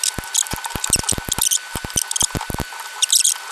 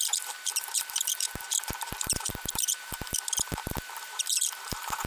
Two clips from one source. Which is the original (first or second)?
first